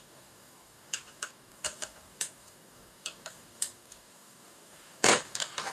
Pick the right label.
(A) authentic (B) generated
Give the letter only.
B